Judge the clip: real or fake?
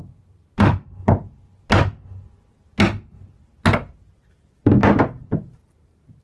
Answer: real